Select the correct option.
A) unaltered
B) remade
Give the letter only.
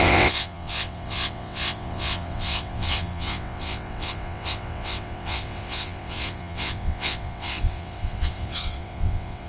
B